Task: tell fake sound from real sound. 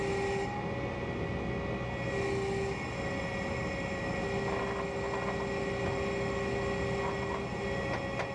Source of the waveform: real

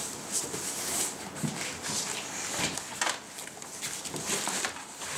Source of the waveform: real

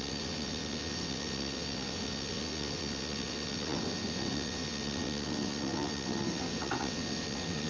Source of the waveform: fake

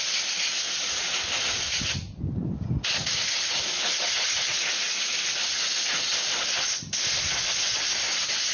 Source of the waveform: real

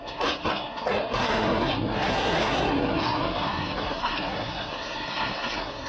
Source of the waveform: fake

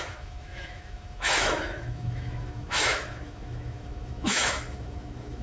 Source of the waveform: fake